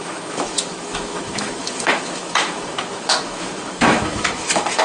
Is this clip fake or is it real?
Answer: fake